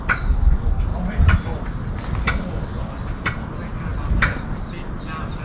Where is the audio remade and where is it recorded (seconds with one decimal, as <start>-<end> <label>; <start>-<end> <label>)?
0.0-5.4 recorded